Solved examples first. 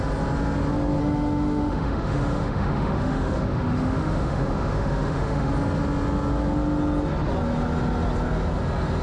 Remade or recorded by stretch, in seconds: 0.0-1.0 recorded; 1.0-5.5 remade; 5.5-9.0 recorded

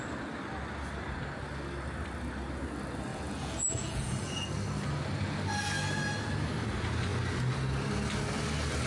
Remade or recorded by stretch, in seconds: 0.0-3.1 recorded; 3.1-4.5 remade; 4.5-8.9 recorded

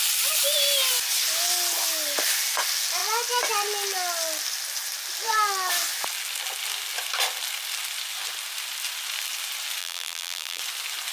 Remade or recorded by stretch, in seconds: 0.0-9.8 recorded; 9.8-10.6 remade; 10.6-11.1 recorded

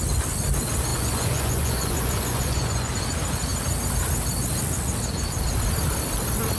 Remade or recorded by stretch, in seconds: 0.0-0.9 recorded; 0.9-2.9 remade; 2.9-6.6 recorded

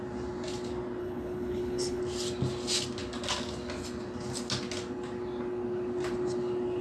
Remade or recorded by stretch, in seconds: 0.0-1.0 recorded; 1.0-2.0 remade; 2.0-6.8 recorded